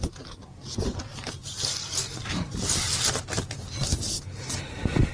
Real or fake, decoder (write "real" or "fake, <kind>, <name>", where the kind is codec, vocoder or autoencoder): real